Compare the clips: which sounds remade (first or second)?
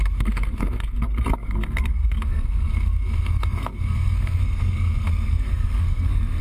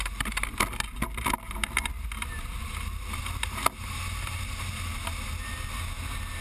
first